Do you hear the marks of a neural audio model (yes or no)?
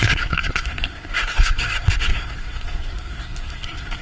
yes